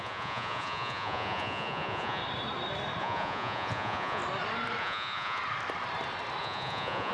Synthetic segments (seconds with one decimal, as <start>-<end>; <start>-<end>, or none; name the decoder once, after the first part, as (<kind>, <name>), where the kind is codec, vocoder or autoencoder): 0.0-2.2 (vocoder, Vocos); 3.0-4.2; 4.8-5.4; 6.4-7.1